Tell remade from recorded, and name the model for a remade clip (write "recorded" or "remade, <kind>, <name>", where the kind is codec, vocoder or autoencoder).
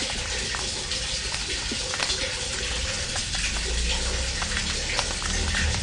recorded